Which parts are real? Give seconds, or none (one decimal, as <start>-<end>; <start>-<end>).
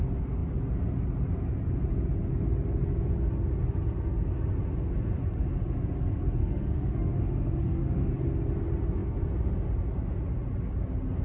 0.0-6.4; 8.1-11.2